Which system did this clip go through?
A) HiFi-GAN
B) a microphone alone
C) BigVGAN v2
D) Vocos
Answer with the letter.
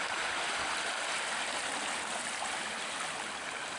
B